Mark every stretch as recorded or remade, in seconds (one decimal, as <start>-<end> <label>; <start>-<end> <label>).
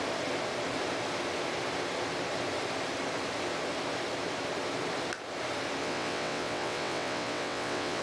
0.0-5.8 recorded; 5.8-8.0 remade